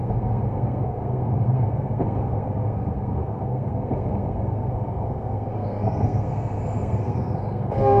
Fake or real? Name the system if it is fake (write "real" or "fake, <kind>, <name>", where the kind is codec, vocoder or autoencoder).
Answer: fake, codec, SNAC